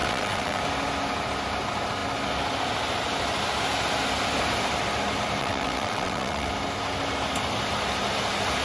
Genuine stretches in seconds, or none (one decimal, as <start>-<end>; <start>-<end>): 0.6-5.4; 6.5-8.6

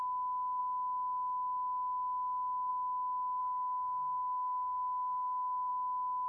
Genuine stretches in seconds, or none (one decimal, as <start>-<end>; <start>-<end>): 0.0-3.4; 5.7-6.3